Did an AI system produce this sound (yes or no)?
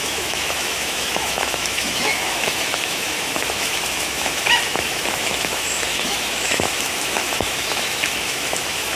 yes